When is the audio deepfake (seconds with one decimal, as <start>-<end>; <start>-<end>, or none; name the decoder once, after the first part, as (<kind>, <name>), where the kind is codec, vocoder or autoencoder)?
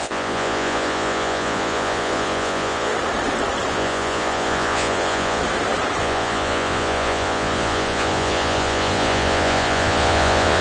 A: 0.0-2.9 (vocoder, Vocos); 3.7-5.4; 6.0-10.6